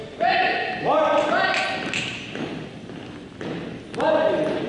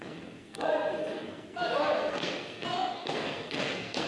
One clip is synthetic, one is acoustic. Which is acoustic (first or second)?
first